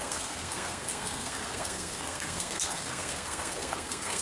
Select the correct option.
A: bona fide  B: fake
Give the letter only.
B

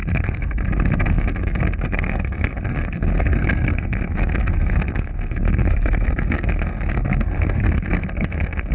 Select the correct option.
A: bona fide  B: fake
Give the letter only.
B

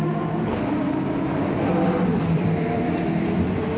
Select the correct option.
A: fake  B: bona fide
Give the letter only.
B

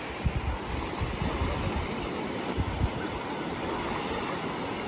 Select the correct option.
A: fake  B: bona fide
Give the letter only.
B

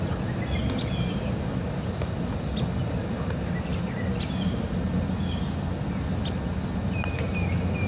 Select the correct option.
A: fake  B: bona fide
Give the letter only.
B